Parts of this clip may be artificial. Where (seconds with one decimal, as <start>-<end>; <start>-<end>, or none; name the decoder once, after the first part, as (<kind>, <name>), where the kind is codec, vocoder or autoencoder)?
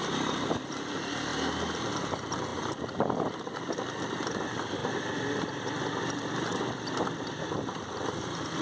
0.0-1.3 (vocoder, BigVGAN v2); 1.8-8.6